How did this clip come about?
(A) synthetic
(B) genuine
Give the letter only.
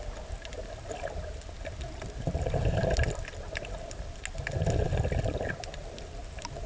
B